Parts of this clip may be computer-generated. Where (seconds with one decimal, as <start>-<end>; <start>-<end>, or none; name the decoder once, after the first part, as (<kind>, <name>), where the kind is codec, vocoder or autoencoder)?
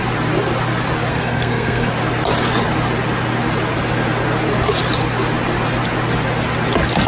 1.1-1.9 (codec, SNAC)